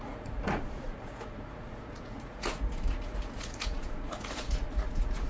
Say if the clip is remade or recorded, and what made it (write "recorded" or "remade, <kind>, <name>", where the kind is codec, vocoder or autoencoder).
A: remade, vocoder, Vocos